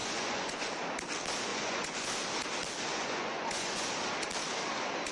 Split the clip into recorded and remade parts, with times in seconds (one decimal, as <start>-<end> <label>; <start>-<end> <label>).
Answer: 0.0-0.7 remade; 0.7-1.5 recorded; 1.5-2.1 remade; 2.1-2.9 recorded; 2.9-3.9 remade; 3.9-5.1 recorded